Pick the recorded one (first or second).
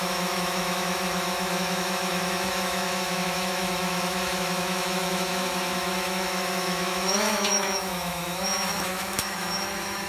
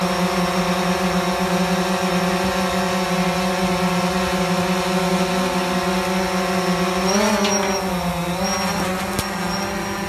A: second